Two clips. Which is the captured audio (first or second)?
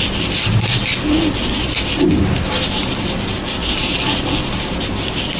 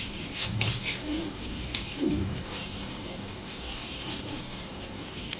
first